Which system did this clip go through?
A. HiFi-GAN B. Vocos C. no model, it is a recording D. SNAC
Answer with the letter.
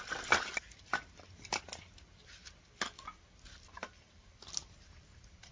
C